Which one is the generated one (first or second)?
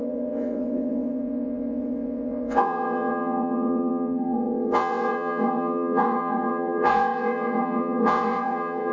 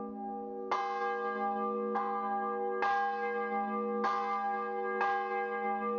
first